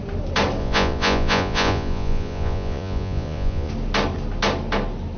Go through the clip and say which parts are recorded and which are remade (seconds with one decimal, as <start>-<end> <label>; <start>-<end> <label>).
0.0-0.6 recorded; 0.6-3.7 remade; 3.7-5.2 recorded